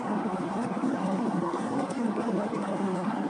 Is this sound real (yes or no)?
no